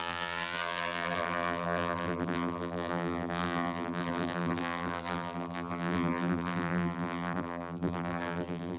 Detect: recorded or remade remade